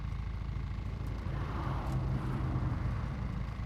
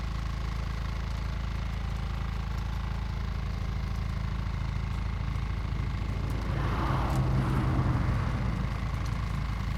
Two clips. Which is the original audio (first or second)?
second